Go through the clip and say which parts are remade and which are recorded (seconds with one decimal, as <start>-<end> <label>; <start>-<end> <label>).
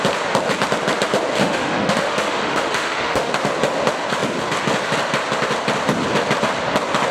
0.0-1.4 recorded; 1.4-3.3 remade; 3.3-7.1 recorded